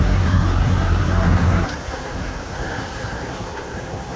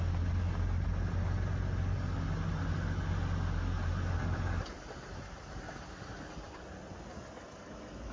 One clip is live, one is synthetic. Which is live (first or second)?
second